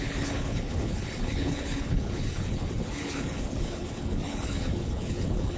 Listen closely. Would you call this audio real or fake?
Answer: fake